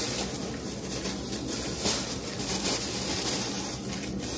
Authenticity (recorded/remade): recorded